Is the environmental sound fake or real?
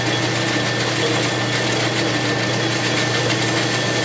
real